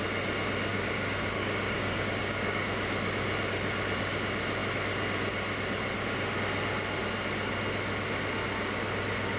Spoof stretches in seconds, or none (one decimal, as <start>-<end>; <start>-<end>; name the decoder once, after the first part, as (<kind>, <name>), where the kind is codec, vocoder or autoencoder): 0.7-2.7 (codec, DAC)